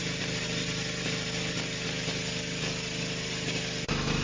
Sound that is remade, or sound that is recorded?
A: recorded